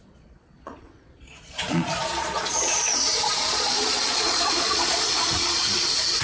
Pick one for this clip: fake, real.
fake